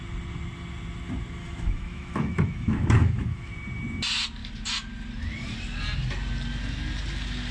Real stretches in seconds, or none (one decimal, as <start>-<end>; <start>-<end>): 0.0-1.4; 3.5-7.5